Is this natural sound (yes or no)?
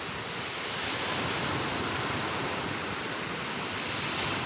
yes